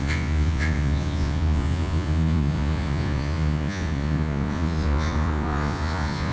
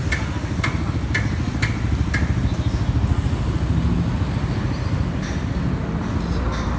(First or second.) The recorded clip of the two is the second